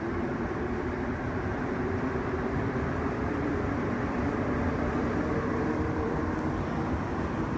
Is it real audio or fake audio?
fake